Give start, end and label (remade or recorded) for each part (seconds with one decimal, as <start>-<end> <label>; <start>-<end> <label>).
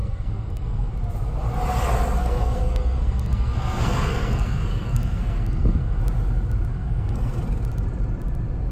0.0-0.9 remade; 0.9-2.2 recorded; 2.2-6.0 remade; 6.0-6.7 recorded; 6.7-7.4 remade; 7.4-8.7 recorded